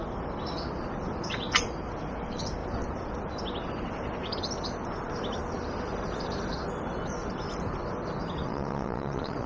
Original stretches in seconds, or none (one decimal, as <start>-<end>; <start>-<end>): 0.0-8.4